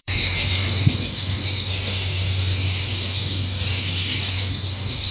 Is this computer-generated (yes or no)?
yes